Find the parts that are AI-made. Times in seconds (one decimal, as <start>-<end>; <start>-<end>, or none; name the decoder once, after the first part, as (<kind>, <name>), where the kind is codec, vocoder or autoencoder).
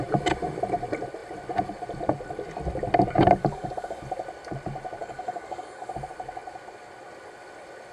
3.4-4.0 (codec, DAC); 5.0-5.9